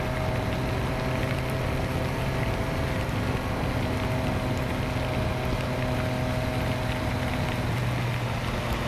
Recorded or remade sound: recorded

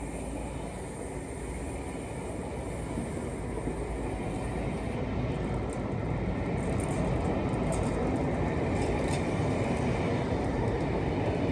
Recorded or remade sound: recorded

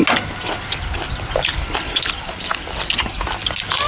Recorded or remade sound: recorded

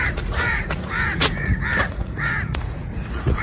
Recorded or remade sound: remade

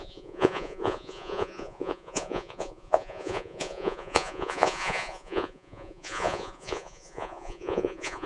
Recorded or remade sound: remade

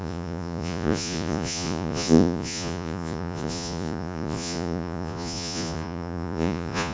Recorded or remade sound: remade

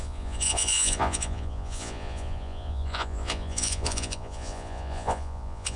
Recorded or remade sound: remade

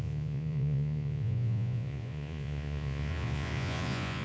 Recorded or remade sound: remade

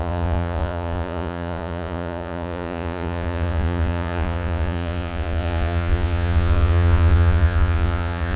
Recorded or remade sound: remade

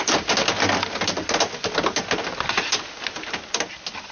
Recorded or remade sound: recorded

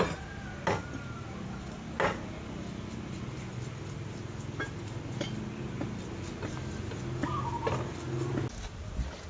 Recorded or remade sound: recorded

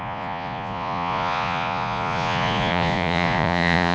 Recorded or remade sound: remade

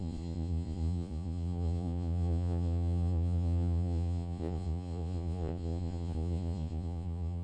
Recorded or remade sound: remade